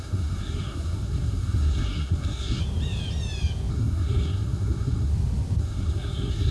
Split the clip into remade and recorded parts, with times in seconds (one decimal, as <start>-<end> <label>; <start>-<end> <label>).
0.0-2.6 remade; 2.6-3.7 recorded; 3.7-5.1 remade; 5.1-5.6 recorded; 5.6-6.5 remade

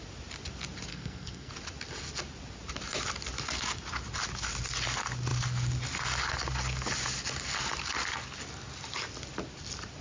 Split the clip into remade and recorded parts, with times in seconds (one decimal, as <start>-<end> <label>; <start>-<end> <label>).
0.0-0.9 recorded; 0.9-1.5 remade; 1.5-10.0 recorded

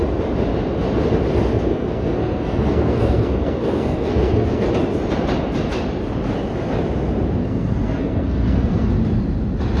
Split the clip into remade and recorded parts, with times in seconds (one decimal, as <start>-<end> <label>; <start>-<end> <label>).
0.0-1.7 recorded; 1.7-4.7 remade; 4.7-7.4 recorded; 7.4-8.9 remade; 8.9-9.8 recorded

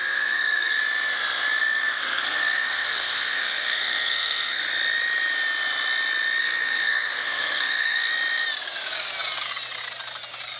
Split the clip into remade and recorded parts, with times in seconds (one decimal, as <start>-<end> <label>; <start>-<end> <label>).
0.0-0.8 remade; 0.8-1.6 recorded; 1.6-4.6 remade; 4.6-6.4 recorded; 6.4-8.1 remade; 8.1-10.6 recorded

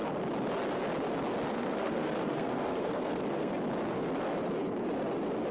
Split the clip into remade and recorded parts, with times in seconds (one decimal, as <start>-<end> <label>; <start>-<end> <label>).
0.0-1.5 recorded; 1.5-3.5 remade; 3.5-5.5 recorded

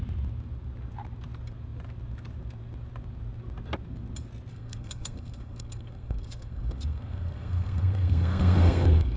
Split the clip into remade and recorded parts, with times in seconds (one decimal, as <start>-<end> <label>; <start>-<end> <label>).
0.0-4.5 recorded; 4.5-9.2 remade

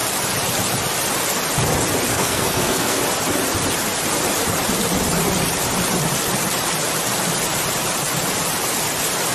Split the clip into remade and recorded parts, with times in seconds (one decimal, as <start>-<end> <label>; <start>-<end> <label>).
0.0-2.1 recorded; 2.1-3.0 remade; 3.0-9.3 recorded